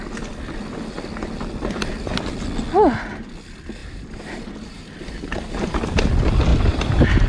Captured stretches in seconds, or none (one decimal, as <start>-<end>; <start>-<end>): 0.0-3.8; 5.8-6.5